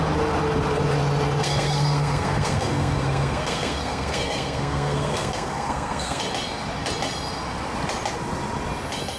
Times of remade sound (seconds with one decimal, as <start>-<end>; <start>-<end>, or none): 1.4-6.2